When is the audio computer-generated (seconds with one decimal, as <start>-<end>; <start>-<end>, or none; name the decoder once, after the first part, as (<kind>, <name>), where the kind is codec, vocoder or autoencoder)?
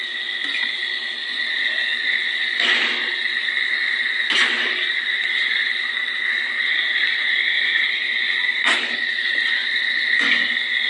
none